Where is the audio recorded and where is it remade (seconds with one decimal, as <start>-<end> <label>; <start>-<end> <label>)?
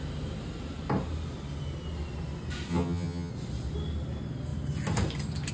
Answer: 0.0-2.7 recorded; 2.7-3.3 remade; 3.3-5.5 recorded